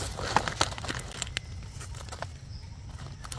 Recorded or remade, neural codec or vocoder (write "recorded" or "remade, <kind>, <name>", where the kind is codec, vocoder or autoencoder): recorded